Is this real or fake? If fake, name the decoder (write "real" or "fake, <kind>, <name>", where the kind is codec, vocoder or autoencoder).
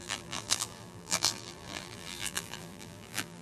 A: fake, vocoder, BigVGAN v2